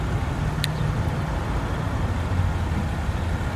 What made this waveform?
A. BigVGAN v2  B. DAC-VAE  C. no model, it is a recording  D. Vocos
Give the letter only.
A